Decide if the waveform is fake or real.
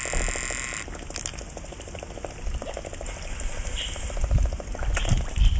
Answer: real